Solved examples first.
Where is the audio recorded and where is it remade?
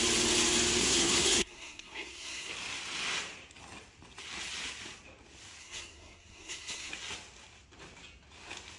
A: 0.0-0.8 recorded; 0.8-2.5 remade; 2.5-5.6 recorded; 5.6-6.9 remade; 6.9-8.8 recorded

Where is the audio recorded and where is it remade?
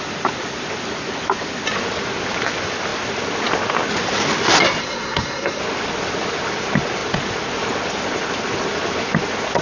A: 0.0-4.8 recorded; 4.8-5.6 remade; 5.6-9.6 recorded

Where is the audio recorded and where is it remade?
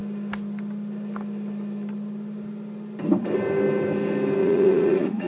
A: 0.0-4.4 recorded; 4.4-5.3 remade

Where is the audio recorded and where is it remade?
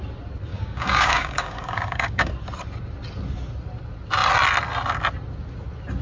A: 0.0-0.5 recorded; 0.5-2.3 remade; 2.3-6.0 recorded